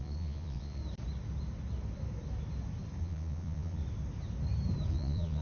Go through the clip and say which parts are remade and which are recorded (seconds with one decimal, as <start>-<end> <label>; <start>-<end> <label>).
0.0-0.8 remade; 0.8-3.0 recorded; 3.0-3.8 remade; 3.8-4.9 recorded; 4.9-5.4 remade